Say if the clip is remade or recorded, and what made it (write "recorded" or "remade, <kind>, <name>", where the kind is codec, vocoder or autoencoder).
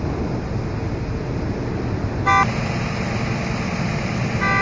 recorded